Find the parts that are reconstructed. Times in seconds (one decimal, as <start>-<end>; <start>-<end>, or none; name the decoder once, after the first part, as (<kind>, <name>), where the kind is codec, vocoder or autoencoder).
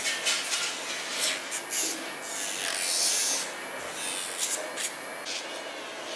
none